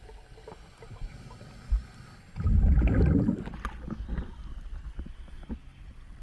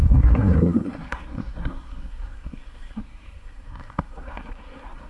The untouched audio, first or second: first